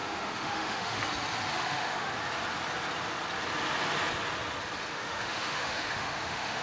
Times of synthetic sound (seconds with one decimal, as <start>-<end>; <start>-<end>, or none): 0.0-1.0; 1.5-2.1; 4.9-6.6